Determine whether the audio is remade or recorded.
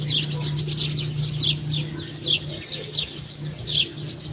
recorded